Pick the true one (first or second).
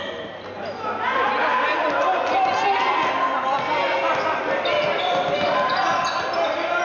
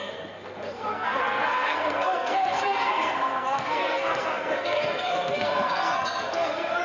first